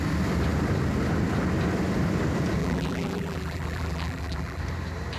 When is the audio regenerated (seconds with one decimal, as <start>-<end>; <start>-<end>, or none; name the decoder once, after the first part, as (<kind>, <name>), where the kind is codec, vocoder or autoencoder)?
2.6-4.6 (vocoder, BigVGAN v2)